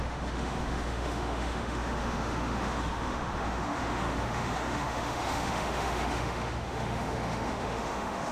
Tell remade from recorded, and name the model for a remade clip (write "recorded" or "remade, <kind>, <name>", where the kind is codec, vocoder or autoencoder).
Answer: remade, autoencoder, DAC-VAE